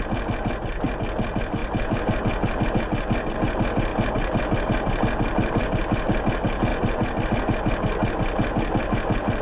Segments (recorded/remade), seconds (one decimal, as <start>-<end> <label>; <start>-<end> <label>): 0.0-6.7 recorded; 6.7-7.3 remade; 7.3-9.4 recorded